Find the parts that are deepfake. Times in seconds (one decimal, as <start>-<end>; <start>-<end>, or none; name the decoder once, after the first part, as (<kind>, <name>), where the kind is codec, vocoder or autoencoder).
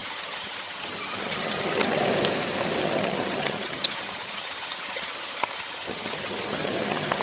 0.0-2.0 (vocoder, HiFi-GAN); 2.8-7.2